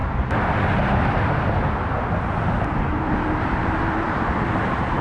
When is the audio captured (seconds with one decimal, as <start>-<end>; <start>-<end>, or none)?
0.0-3.0